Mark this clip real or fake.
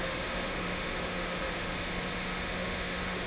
fake